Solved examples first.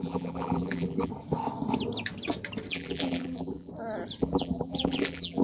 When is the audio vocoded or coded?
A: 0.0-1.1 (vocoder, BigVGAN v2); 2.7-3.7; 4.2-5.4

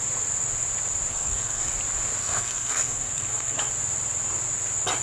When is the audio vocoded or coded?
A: 1.1-1.7 (codec, SNAC); 2.2-3.7